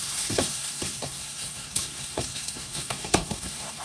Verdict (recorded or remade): remade